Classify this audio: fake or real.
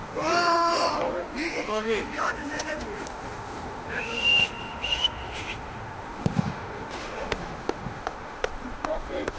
fake